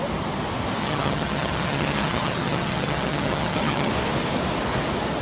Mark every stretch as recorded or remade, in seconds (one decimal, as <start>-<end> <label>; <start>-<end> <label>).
0.0-0.8 recorded; 0.8-3.9 remade; 3.9-5.2 recorded